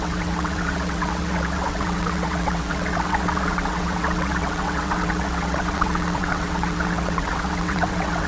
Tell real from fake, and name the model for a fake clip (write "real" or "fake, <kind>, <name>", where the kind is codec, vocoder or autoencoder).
fake, vocoder, WaveNeXt